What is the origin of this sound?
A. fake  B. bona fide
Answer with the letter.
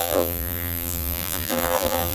A